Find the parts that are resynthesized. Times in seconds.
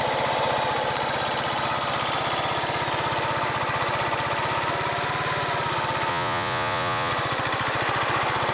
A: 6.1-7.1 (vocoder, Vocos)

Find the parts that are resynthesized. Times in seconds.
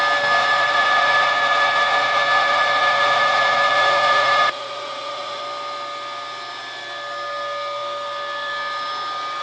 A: 0.4-5.4 (vocoder, Vocos)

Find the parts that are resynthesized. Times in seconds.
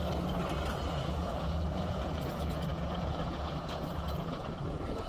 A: 0.8-5.1 (vocoder, Vocos)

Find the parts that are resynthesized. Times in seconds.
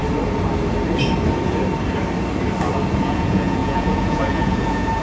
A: 3.0-5.0 (vocoder, Vocos)